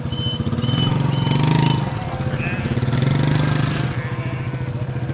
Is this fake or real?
real